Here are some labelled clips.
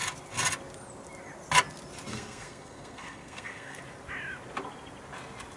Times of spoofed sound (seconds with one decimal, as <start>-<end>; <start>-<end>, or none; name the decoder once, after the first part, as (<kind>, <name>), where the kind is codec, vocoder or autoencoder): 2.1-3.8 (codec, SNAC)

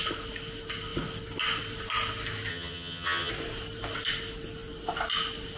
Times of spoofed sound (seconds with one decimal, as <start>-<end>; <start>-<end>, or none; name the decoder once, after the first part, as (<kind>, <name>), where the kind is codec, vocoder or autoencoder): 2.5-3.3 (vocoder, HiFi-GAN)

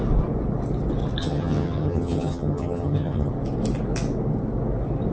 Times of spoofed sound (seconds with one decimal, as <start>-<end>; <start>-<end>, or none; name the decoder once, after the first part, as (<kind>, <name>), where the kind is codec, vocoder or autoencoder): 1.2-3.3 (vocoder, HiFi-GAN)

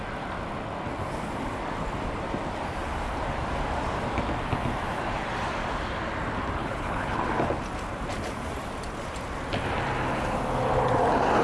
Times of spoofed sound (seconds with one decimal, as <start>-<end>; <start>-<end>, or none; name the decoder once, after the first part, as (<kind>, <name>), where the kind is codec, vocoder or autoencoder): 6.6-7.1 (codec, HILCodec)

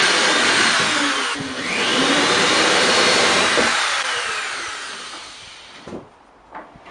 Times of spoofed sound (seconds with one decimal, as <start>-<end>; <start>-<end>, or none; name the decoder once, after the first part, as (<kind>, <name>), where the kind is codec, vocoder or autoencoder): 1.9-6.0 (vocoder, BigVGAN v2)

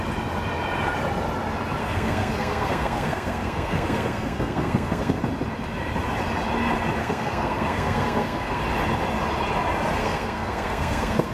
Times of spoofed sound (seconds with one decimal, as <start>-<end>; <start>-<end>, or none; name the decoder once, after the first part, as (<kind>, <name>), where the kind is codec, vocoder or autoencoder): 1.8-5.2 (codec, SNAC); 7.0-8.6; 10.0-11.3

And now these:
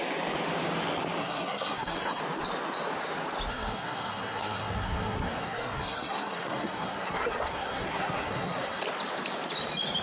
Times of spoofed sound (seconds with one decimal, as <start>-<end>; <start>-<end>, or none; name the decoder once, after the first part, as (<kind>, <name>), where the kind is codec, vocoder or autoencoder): 1.2-2.2 (codec, SNAC); 3.5-8.8

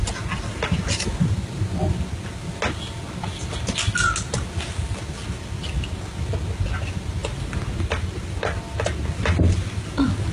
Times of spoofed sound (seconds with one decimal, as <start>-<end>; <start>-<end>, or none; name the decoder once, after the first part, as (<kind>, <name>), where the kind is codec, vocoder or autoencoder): none